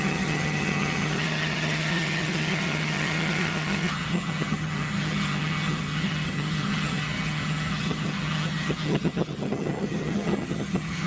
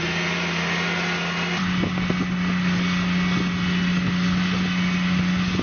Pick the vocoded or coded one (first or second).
first